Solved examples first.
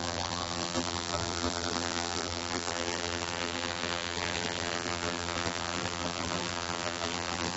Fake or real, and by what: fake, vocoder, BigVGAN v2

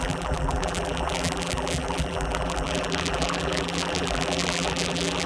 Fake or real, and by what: fake, vocoder, BigVGAN v2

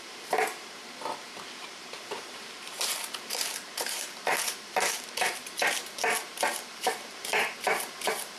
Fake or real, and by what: fake, vocoder, BigVGAN v2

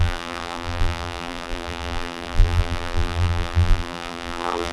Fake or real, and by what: fake, vocoder, BigVGAN v2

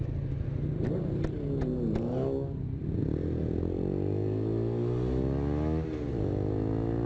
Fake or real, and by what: real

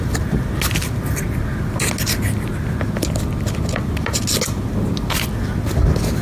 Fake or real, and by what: real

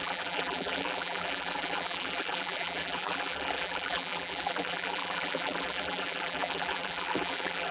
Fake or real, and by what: fake, vocoder, BigVGAN v2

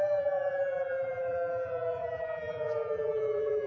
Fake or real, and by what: fake, vocoder, BigVGAN v2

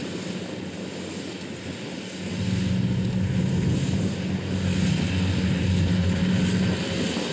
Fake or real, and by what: real